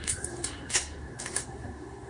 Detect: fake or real fake